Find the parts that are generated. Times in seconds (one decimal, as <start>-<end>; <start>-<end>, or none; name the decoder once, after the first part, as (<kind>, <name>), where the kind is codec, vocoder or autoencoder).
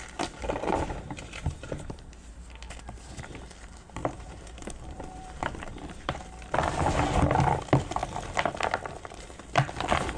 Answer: 0.7-2.3 (vocoder, BigVGAN v2); 4.0-6.2